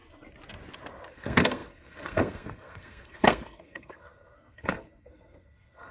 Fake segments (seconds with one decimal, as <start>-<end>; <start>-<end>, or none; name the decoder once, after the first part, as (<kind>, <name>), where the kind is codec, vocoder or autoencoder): 1.1-5.9 (codec, SNAC)